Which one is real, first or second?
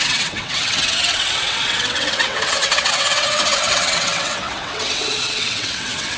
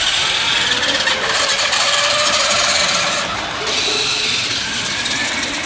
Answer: second